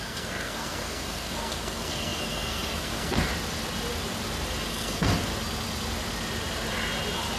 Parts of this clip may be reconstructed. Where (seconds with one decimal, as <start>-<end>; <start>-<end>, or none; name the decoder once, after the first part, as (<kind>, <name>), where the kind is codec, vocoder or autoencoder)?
0.0-3.3 (codec, SNAC); 4.7-5.3